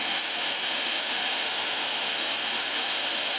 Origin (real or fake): fake